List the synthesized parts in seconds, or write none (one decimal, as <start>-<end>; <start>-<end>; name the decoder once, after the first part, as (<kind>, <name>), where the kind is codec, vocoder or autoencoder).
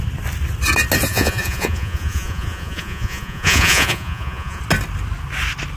1.1-4.6 (vocoder, Vocos)